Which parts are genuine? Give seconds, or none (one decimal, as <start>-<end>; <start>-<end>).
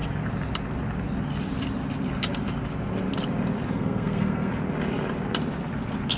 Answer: 0.0-3.7; 4.5-6.2